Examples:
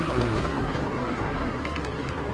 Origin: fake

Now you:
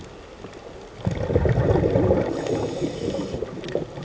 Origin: real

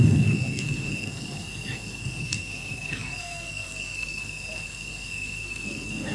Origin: fake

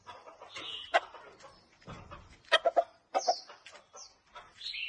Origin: real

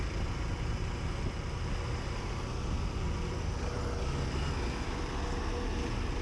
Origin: real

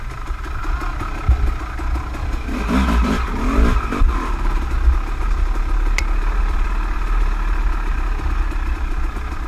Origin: real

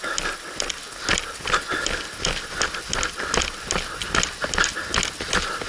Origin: real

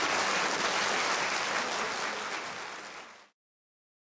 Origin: real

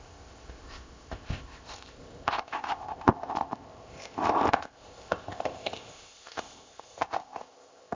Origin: fake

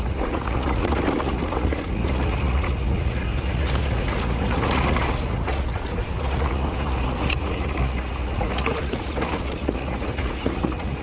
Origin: fake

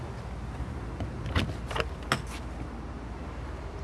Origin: real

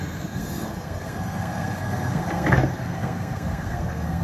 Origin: fake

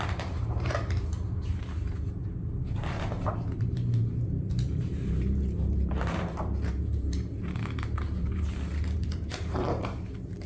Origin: fake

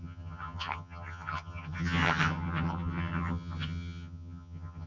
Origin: fake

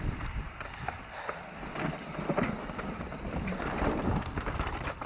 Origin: real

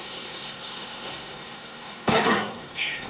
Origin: fake